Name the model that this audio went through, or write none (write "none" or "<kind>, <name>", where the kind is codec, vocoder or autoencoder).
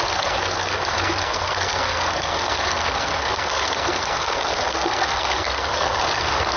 codec, SNAC